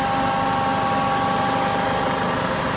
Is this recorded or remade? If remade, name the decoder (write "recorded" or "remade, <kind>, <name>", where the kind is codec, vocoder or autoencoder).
recorded